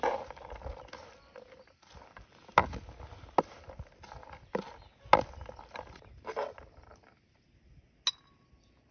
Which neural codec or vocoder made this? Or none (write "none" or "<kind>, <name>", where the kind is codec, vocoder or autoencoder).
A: none